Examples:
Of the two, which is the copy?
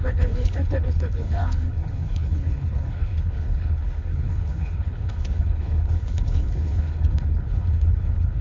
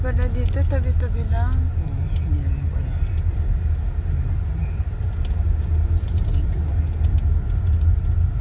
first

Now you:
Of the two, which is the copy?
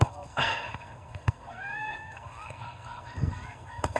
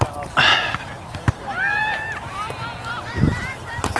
first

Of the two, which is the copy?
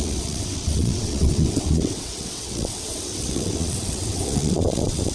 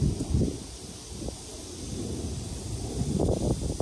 first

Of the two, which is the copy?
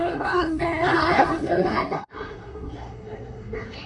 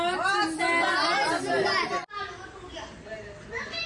first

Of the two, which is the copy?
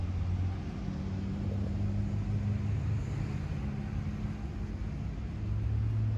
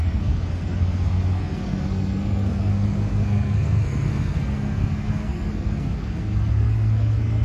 second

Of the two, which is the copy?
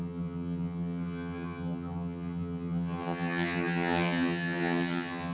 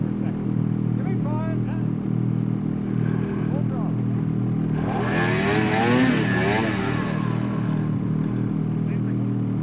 first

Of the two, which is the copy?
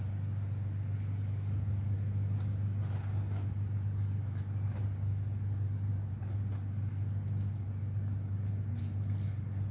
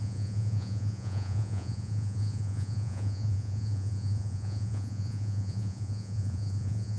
second